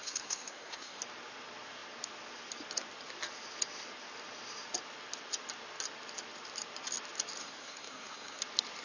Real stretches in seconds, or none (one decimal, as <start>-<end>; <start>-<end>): 1.0-7.4; 8.4-8.8